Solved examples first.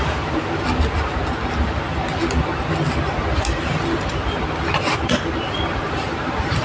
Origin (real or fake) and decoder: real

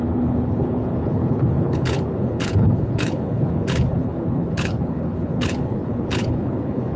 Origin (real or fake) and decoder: fake, codec, HILCodec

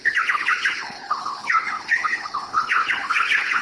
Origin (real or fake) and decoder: fake, codec, HILCodec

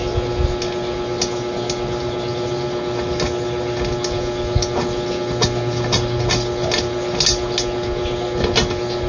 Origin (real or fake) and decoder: real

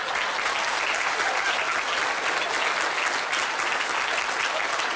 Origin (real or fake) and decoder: real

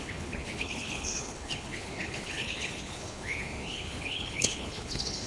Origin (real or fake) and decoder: fake, codec, HILCodec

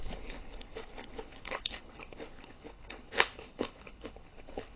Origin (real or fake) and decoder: fake, codec, HILCodec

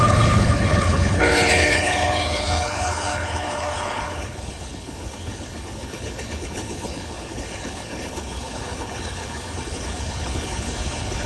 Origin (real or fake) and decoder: fake, codec, HILCodec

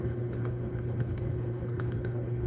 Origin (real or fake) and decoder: fake, codec, HILCodec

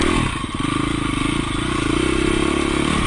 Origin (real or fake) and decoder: real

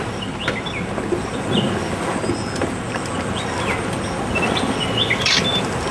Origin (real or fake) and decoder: real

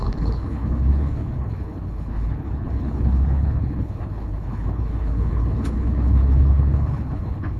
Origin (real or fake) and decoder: fake, codec, HILCodec